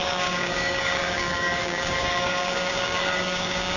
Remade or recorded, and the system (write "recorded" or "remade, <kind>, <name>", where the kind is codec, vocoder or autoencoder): remade, codec, DAC